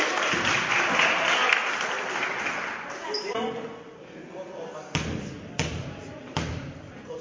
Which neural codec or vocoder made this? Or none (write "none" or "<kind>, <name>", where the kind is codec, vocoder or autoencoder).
none